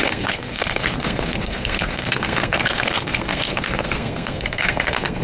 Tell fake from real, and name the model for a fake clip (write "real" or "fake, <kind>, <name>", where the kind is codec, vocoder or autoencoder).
fake, codec, SNAC